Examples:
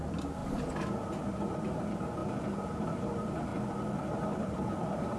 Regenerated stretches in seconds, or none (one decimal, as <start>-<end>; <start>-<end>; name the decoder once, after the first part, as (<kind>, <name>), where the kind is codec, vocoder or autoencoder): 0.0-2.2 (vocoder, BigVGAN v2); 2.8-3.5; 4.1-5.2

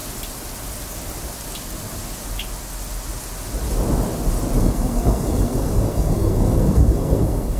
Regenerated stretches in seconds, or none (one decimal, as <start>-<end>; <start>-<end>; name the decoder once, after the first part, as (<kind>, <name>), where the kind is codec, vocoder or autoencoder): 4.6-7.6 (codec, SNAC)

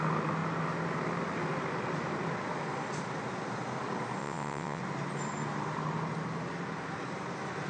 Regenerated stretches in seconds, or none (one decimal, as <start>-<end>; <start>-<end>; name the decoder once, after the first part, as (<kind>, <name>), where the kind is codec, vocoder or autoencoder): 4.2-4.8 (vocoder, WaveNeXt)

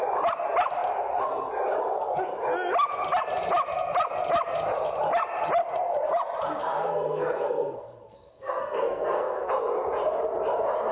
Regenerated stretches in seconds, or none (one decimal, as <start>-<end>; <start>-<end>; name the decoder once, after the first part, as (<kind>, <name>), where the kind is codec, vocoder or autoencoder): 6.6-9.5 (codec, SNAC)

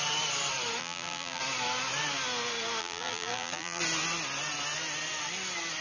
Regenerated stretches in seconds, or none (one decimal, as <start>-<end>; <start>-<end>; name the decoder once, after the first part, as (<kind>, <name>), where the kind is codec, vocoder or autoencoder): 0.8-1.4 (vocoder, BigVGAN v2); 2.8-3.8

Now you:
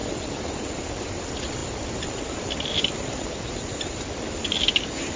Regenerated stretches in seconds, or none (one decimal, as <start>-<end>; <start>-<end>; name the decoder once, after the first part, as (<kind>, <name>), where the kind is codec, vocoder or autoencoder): none

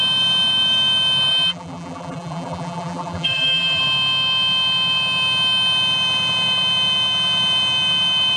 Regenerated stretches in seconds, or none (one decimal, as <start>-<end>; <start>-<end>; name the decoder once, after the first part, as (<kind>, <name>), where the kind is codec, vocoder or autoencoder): 1.3-3.8 (vocoder, BigVGAN v2)

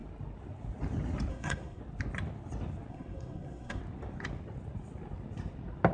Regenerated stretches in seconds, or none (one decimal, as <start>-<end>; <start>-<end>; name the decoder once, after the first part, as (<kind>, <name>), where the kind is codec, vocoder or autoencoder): 1.3-1.8 (codec, SNAC); 2.9-3.8